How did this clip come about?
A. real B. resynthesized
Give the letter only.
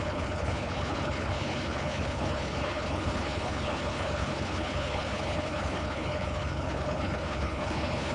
B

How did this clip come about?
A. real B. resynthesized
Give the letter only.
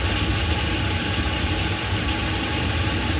A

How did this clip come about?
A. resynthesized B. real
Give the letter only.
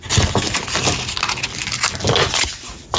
B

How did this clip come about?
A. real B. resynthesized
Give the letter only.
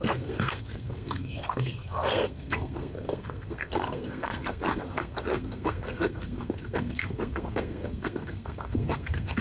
B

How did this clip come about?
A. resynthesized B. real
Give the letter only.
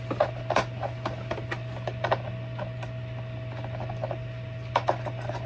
B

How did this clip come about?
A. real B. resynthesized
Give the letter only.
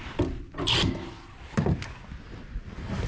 A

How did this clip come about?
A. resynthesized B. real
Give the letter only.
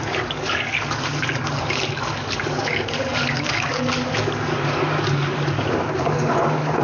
A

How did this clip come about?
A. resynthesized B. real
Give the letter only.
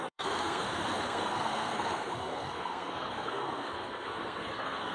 A